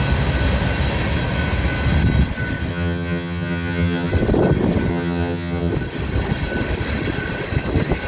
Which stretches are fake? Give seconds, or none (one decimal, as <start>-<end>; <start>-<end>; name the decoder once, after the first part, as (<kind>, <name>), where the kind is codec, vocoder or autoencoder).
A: 2.7-4.1 (vocoder, HiFi-GAN); 4.9-5.7